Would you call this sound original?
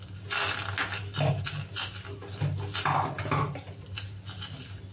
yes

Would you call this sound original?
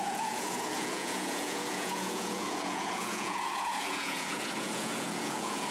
no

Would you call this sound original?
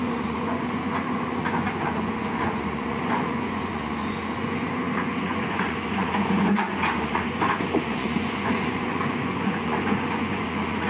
no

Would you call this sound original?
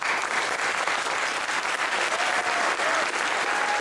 yes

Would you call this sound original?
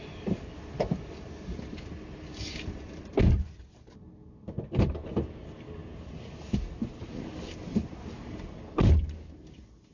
yes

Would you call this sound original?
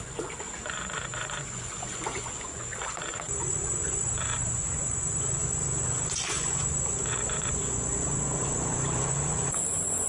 no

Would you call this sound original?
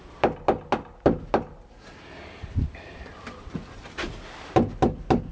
yes